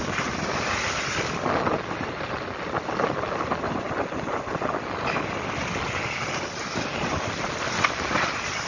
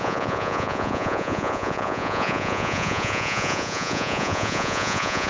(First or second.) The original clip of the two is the first